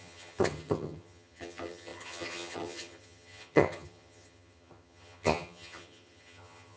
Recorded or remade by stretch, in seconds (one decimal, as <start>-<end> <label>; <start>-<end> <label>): 0.0-6.8 remade